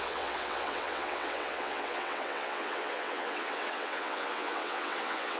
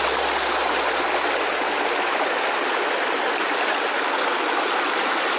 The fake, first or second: first